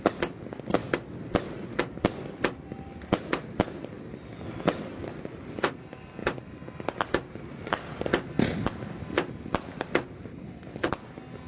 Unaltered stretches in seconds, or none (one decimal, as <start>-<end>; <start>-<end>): 0.0-10.3; 10.9-11.5